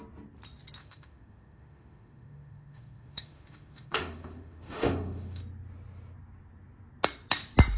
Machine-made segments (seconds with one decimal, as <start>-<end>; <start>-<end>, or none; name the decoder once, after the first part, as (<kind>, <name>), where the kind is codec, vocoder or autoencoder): 0.8-5.4 (autoencoder, DAC-VAE)